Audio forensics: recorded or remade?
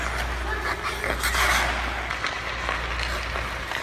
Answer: recorded